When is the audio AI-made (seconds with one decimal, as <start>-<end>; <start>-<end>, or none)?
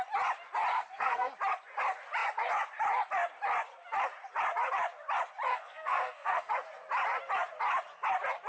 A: 0.7-1.3; 5.5-6.5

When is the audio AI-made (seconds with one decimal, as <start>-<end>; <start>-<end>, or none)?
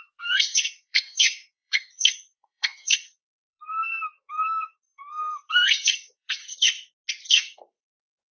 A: 0.0-6.4; 7.3-8.3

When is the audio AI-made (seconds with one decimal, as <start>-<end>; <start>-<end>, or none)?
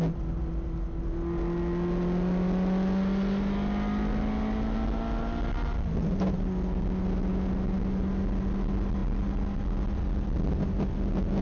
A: none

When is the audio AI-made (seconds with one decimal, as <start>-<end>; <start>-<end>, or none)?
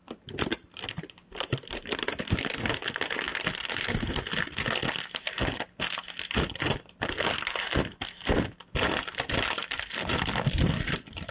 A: none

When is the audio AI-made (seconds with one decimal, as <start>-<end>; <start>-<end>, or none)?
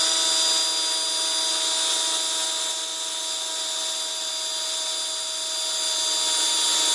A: none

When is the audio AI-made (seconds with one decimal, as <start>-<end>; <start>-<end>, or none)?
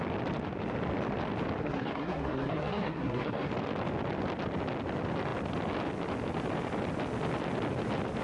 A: 1.6-3.5